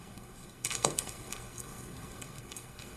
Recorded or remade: remade